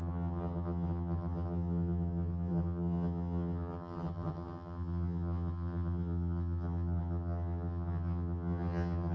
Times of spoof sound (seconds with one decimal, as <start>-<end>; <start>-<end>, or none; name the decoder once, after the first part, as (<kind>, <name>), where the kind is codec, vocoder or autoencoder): 0.0-9.1 (vocoder, HiFi-GAN)